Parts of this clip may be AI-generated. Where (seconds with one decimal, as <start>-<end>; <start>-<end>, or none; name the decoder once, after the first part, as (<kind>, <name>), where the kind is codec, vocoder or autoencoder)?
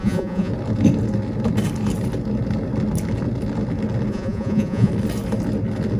0.0-0.5 (vocoder, Vocos); 4.1-4.9